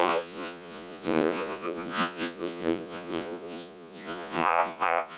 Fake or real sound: fake